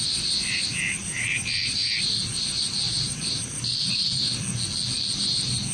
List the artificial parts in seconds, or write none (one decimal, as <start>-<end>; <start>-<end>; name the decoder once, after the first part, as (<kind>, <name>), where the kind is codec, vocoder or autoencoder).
0.0-4.3 (vocoder, BigVGAN v2); 5.2-5.7